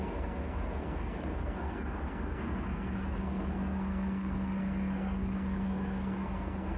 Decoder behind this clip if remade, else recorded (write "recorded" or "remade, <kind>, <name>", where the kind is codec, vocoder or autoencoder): remade, codec, SNAC